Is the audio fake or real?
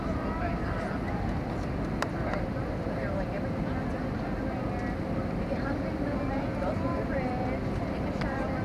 real